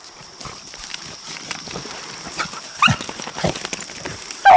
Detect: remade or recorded recorded